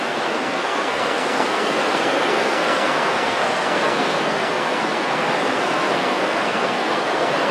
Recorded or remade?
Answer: remade